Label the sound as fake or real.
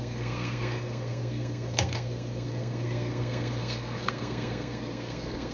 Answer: fake